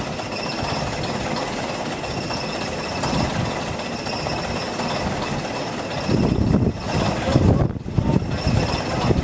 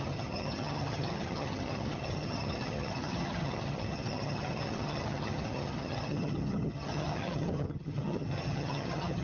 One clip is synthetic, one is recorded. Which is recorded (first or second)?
first